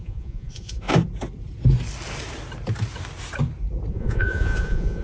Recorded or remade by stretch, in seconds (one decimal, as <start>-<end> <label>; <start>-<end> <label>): 0.0-0.9 remade; 0.9-3.9 recorded; 3.9-5.0 remade